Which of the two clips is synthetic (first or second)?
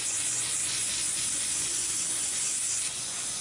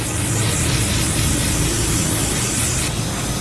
first